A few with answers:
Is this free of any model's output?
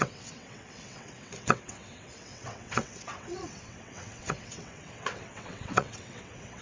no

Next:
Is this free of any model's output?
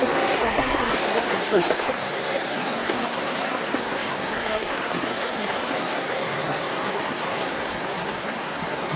no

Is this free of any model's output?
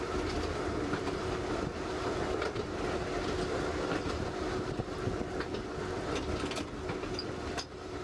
yes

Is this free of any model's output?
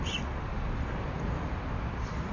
no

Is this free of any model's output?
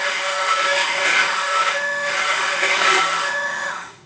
no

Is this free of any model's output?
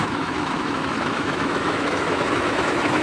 no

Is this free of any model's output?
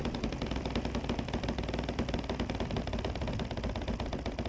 yes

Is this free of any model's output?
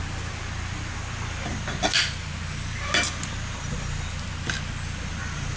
yes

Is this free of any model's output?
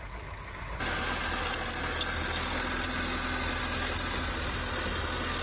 yes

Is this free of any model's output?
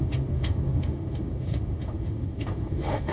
no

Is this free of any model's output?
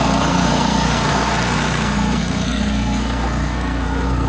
no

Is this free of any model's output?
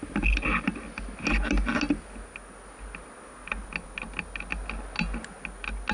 yes